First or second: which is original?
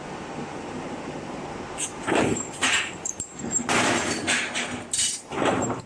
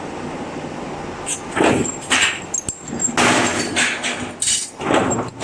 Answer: second